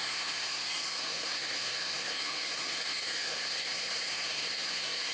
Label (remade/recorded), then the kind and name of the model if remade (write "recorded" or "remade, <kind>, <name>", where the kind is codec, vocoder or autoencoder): remade, codec, SNAC